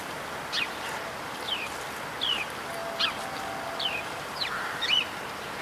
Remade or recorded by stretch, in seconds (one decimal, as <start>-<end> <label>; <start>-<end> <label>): 0.0-5.6 recorded